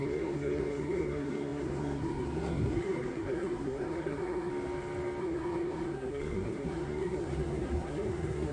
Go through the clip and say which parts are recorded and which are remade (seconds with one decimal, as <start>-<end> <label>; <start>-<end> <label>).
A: 0.0-4.5 remade; 4.5-5.2 recorded; 5.2-8.5 remade